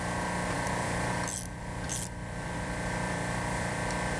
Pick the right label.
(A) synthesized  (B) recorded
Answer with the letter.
A